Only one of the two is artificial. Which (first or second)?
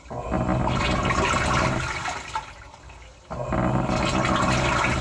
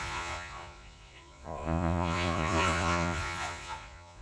second